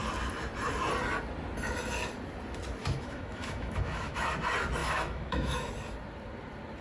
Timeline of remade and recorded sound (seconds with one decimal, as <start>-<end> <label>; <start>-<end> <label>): 0.0-2.8 recorded; 2.8-4.3 remade; 4.3-4.8 recorded; 4.8-5.7 remade; 5.7-6.8 recorded